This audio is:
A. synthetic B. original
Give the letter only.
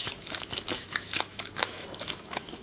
A